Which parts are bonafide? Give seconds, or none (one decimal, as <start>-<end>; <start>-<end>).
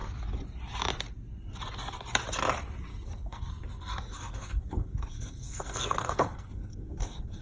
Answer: 0.0-2.9